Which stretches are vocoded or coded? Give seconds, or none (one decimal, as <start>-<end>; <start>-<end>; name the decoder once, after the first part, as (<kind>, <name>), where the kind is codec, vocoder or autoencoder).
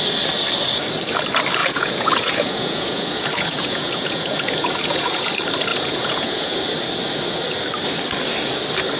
1.6-5.3 (vocoder, Vocos); 5.7-6.6